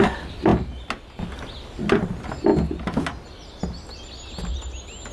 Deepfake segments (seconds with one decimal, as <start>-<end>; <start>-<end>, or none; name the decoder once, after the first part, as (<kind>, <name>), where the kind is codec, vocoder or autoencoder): none